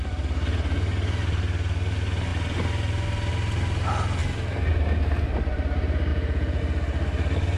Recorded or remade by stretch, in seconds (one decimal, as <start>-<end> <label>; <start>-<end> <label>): 0.0-6.1 recorded; 6.1-6.6 remade; 6.6-7.6 recorded